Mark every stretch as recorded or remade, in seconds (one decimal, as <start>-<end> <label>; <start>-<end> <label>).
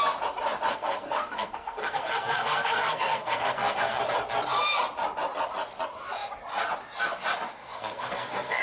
0.0-0.7 recorded; 0.7-4.0 remade; 4.0-7.6 recorded; 7.6-8.6 remade